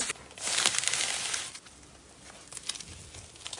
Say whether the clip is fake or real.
real